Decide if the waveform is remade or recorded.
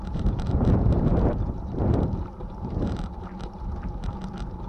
remade